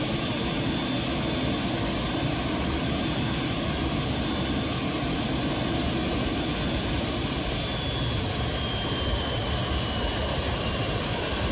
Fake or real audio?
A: real